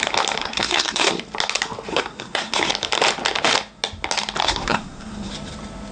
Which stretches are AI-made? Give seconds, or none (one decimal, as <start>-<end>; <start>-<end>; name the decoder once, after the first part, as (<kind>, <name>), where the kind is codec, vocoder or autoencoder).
0.4-1.1 (codec, SNAC); 1.9-2.7; 4.4-5.3

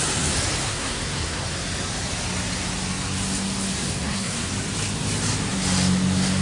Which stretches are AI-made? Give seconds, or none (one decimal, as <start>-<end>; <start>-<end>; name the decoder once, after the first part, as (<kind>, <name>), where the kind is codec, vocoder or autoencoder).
0.6-1.6 (codec, SNAC); 3.7-4.5

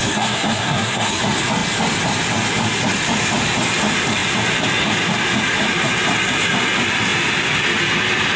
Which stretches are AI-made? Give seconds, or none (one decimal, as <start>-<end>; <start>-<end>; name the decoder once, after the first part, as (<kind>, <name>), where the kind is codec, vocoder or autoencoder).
0.0-1.2 (codec, SNAC)

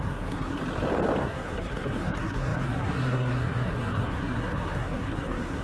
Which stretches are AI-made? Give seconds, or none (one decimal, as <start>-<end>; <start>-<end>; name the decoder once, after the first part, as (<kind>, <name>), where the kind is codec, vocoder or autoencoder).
0.0-0.6 (codec, SNAC); 1.2-5.6

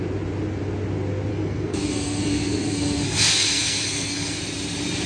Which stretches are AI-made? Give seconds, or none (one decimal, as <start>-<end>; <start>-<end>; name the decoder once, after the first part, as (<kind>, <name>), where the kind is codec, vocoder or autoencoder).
1.3-4.4 (codec, SNAC)

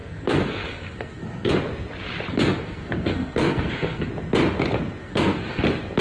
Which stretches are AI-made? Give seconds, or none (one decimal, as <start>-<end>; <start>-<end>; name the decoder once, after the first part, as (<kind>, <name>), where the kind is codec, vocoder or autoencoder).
0.0-1.5 (codec, SNAC); 2.3-4.1; 5.0-5.6